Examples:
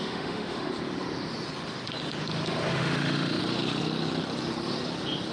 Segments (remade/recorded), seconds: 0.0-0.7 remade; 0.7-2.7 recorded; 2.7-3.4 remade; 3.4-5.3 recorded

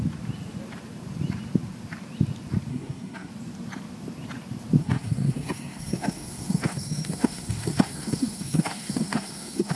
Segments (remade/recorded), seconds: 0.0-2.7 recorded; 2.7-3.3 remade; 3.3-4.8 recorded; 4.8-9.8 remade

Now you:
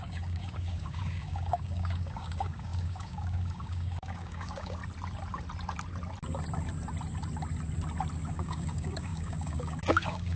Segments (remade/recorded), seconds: 0.0-4.8 remade; 4.8-8.3 recorded; 8.3-10.4 remade